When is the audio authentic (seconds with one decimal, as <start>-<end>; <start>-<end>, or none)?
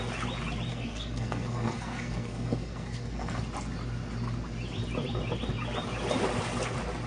0.0-0.7; 3.4-7.1